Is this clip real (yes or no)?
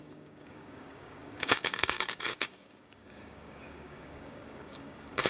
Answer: no